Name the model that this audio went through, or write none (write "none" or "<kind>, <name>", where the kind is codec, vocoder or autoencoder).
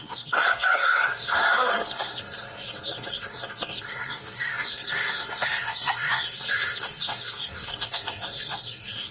codec, SNAC